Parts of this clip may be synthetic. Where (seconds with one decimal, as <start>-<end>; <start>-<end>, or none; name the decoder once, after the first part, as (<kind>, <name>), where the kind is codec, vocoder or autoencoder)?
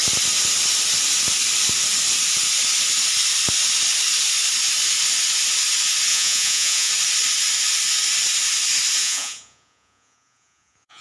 6.1-6.9 (vocoder, Vocos); 9.0-11.0